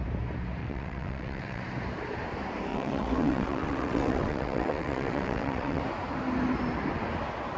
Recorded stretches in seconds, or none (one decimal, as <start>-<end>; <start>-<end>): 0.0-0.6; 1.6-2.7; 5.8-7.6